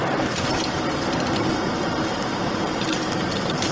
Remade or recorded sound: recorded